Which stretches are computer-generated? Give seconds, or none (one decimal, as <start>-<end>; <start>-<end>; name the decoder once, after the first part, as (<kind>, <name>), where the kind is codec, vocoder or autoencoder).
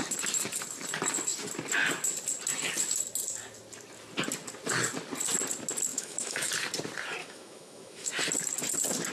5.9-6.5 (autoencoder, DAC-VAE); 7.2-8.1